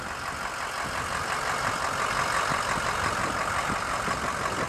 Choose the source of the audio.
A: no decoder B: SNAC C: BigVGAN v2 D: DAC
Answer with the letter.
A